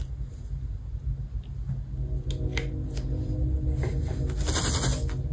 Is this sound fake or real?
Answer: real